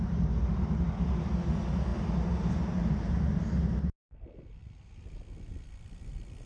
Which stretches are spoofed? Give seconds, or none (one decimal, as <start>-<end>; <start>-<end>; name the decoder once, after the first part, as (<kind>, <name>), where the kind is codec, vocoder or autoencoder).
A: none